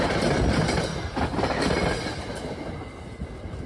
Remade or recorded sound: recorded